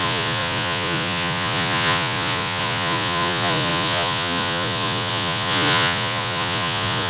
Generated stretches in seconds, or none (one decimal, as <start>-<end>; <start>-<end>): 0.0-7.1